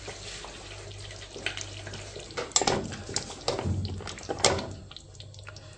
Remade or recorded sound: recorded